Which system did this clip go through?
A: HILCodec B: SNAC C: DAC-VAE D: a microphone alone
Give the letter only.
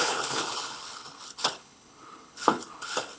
A